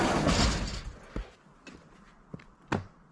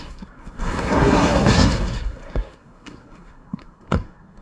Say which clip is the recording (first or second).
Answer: first